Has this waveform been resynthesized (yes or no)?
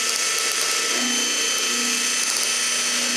no